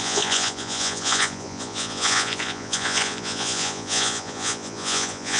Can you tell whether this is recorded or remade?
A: remade